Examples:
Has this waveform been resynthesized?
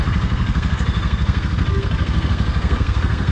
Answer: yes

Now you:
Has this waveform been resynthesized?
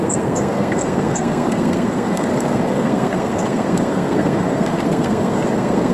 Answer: yes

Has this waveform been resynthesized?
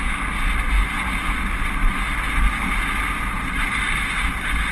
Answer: no